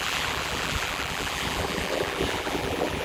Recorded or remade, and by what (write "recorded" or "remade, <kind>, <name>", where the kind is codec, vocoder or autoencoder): remade, vocoder, BigVGAN v2